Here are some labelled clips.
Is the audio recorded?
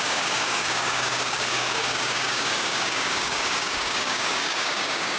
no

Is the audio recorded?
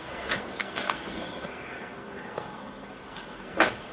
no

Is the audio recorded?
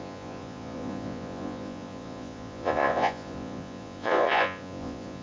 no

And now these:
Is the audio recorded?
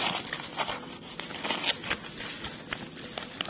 yes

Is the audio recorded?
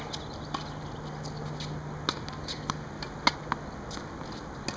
yes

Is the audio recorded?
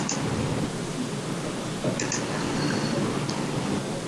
yes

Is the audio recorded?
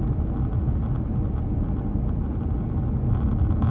yes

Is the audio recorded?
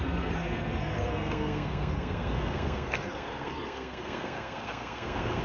no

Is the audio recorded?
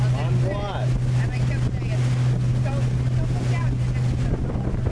yes